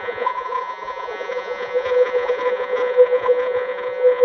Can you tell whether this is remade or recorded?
remade